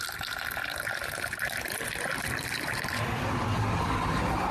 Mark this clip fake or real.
real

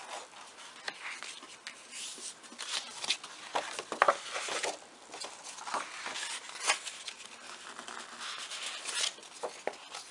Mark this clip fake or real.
real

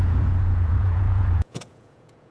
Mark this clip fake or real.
fake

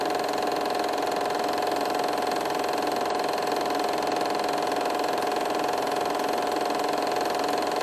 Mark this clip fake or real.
real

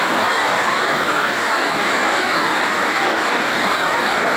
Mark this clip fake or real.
fake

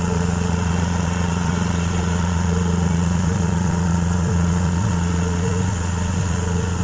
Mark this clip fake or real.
fake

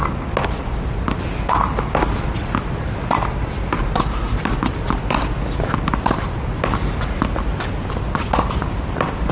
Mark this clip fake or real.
real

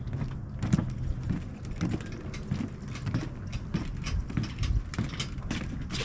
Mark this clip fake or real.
real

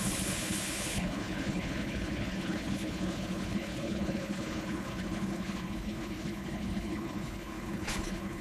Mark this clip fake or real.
fake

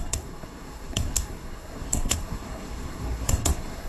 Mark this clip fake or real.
fake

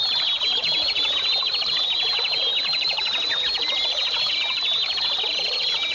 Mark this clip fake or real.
fake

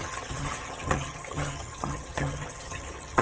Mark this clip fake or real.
fake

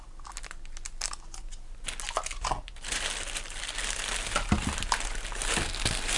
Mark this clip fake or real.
real